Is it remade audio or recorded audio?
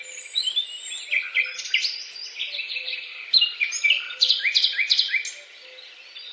recorded